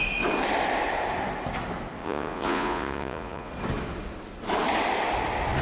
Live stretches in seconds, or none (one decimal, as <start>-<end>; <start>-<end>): 0.0-2.0; 3.5-5.6